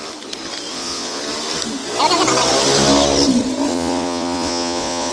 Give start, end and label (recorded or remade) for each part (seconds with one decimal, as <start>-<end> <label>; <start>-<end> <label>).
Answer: 0.0-0.7 recorded; 0.7-1.2 remade; 1.2-3.7 recorded; 3.7-5.1 remade

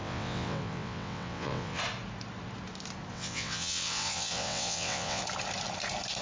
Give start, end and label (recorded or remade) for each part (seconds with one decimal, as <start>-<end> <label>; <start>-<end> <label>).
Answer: 0.0-1.8 remade; 1.8-3.1 recorded; 3.1-5.2 remade; 5.2-6.2 recorded

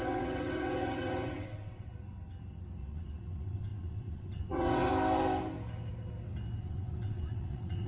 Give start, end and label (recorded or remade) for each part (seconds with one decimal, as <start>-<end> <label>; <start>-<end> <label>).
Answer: 0.0-1.9 remade; 1.9-2.8 recorded; 2.8-4.9 remade; 4.9-6.6 recorded; 6.6-7.9 remade

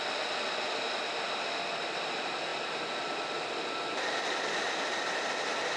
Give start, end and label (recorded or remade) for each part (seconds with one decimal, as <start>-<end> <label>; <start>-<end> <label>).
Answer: 0.0-5.8 recorded